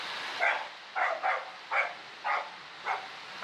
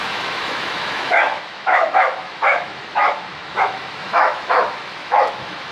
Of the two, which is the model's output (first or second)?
second